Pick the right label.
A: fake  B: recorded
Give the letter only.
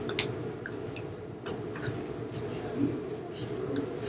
B